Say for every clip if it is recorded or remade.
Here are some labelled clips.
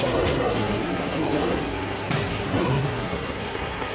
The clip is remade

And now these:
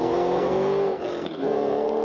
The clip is remade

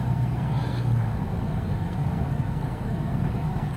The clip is remade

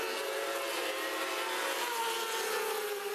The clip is recorded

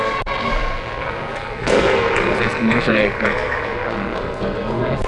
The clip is remade